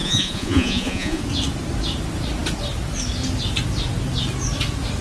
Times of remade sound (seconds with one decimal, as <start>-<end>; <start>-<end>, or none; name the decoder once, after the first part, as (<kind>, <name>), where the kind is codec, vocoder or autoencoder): 0.0-1.2 (vocoder, Vocos)